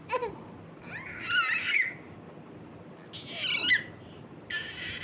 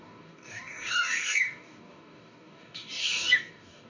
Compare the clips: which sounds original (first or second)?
first